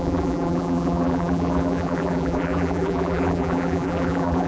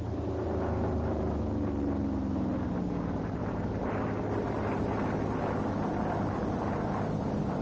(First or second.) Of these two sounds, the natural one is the second